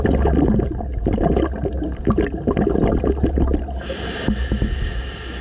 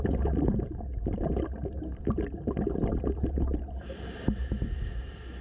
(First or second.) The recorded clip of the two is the first